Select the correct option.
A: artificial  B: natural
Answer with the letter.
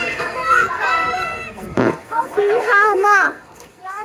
A